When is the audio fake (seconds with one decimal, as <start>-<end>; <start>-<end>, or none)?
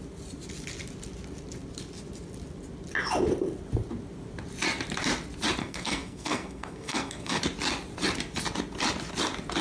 5.6-7.4